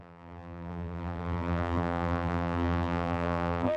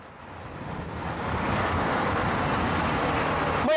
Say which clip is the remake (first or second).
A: first